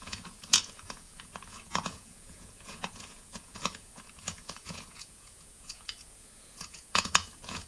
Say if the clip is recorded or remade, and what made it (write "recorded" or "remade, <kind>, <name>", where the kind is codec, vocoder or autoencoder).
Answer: remade, vocoder, Vocos